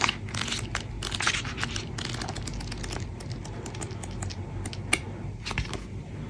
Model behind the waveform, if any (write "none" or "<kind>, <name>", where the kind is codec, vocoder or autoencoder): none